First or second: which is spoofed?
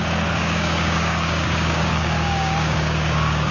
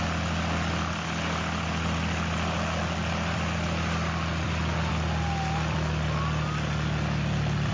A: first